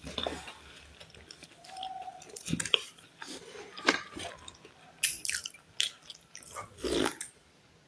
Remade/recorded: recorded